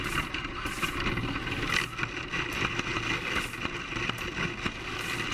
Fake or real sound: real